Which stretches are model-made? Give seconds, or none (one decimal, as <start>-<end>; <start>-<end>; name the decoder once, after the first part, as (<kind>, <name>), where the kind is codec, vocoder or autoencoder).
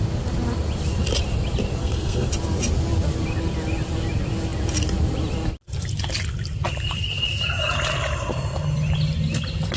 1.8-2.3 (codec, SNAC)